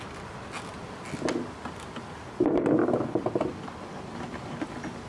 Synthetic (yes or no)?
no